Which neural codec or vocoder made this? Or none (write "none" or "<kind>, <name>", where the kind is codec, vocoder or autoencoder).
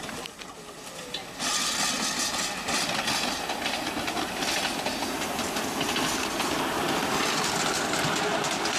none